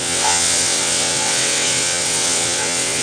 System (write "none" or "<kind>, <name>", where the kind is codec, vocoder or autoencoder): vocoder, WaveNeXt